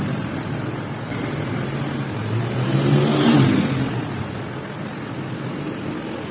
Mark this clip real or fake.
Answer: real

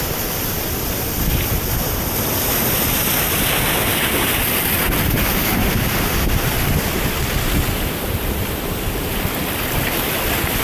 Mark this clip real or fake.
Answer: real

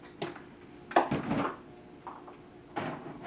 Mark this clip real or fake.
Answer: real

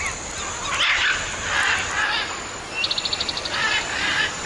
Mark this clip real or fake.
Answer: real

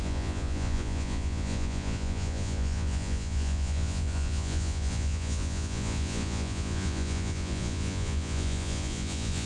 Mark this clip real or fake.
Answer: fake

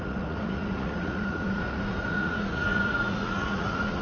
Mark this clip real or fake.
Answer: fake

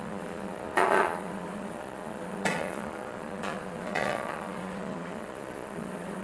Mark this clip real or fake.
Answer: fake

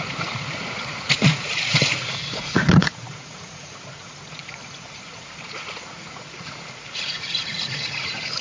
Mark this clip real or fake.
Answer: fake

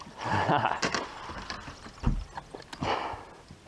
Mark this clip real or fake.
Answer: real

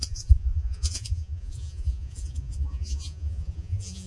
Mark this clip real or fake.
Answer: fake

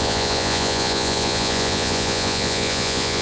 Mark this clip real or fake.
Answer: fake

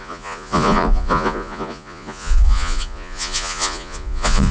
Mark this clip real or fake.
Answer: fake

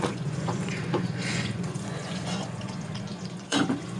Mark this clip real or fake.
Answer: fake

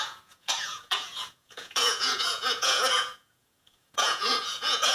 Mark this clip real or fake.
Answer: fake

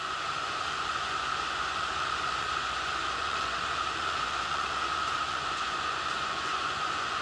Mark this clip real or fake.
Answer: fake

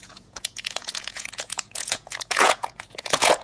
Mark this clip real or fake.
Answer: fake